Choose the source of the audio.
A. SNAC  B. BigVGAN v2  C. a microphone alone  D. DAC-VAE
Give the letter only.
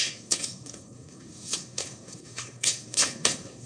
A